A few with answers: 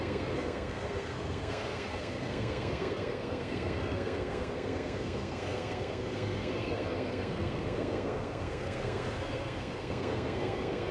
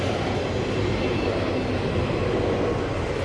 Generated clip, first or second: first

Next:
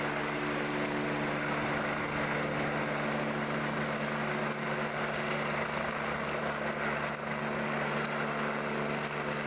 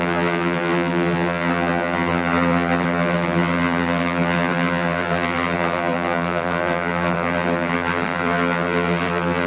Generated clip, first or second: second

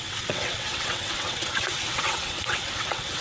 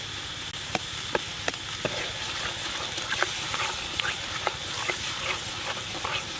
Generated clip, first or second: first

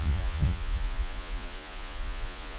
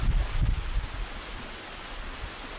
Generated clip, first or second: first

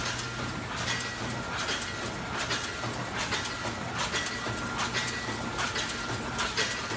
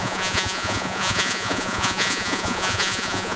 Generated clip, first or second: second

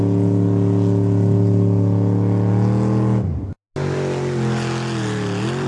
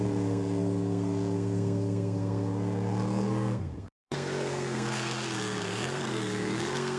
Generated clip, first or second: second